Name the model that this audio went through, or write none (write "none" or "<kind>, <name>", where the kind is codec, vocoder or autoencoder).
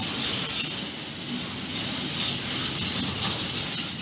none